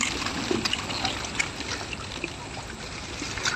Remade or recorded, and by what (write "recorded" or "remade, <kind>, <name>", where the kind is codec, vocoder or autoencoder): recorded